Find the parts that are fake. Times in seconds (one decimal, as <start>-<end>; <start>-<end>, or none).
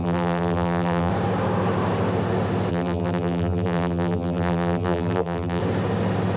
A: 0.0-1.1; 2.7-5.6